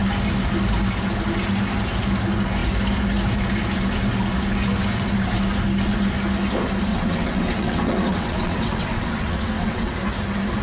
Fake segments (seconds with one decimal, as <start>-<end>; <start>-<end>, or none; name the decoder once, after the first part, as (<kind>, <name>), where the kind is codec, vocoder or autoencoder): 6.9-9.9 (vocoder, WaveNeXt)